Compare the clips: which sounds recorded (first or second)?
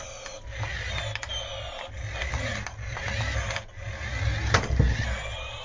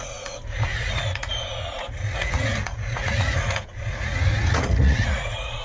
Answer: first